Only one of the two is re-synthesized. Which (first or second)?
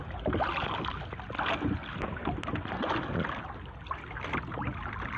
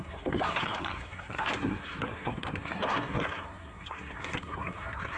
second